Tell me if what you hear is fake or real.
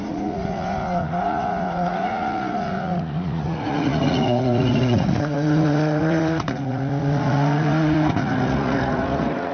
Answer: fake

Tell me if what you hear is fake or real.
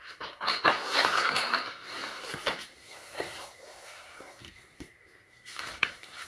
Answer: fake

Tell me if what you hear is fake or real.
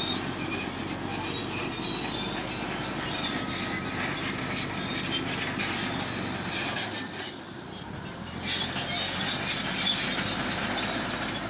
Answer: real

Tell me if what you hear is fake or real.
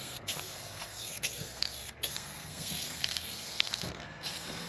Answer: fake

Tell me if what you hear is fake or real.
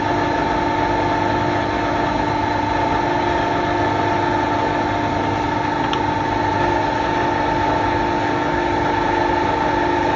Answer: real